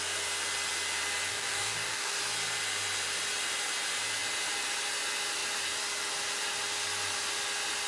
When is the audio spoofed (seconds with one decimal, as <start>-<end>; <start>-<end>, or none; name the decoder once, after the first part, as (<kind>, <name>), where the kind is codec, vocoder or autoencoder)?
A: 1.3-2.2 (codec, DAC)